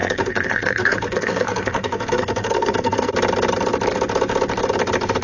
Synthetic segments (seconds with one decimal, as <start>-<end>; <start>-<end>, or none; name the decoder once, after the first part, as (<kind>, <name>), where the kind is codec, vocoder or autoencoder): 0.0-3.1 (codec, SNAC)